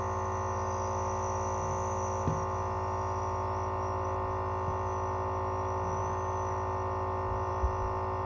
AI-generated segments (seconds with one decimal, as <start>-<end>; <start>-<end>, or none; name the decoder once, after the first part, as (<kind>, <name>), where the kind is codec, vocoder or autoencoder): none